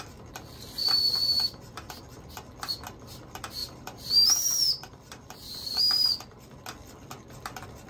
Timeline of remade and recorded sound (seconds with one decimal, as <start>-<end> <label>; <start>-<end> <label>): 0.0-0.8 recorded; 0.8-2.0 remade; 2.0-3.6 recorded; 3.6-5.8 remade; 5.8-7.9 recorded

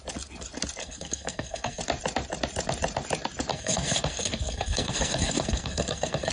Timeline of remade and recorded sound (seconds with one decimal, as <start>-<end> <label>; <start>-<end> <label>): 0.0-0.8 recorded; 0.8-1.8 remade; 1.8-3.5 recorded; 3.5-6.3 remade

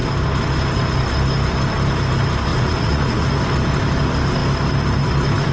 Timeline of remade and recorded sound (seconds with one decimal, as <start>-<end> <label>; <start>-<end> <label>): 0.0-2.5 recorded; 2.5-3.3 remade; 3.3-5.5 recorded

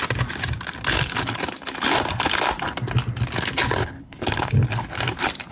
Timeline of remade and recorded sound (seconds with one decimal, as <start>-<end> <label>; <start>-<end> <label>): 0.0-3.8 recorded; 3.8-4.5 remade; 4.5-5.5 recorded

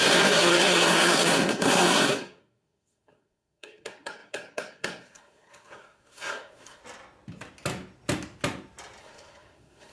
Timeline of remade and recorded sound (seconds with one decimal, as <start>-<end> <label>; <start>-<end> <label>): 0.0-6.8 remade; 6.8-9.0 recorded; 9.0-9.9 remade

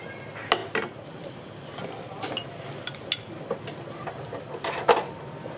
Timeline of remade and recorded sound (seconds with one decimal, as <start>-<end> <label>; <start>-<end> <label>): 0.0-5.6 recorded

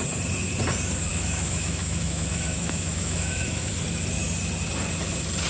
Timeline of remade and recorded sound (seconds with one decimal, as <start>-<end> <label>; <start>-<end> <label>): 0.0-1.1 recorded; 1.1-3.7 remade; 3.7-5.5 recorded